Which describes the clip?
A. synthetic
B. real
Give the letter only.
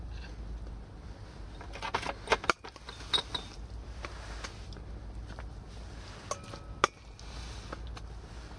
B